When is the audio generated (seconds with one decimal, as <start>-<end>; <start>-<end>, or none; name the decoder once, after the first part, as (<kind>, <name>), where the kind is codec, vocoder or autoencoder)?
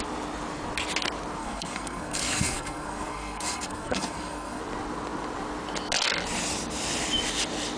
1.4-4.6 (codec, SNAC)